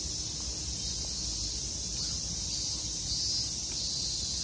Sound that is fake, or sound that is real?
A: real